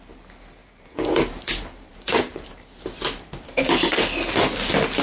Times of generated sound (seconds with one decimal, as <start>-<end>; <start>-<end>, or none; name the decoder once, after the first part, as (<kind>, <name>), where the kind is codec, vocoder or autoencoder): 0.6-3.6 (vocoder, BigVGAN v2)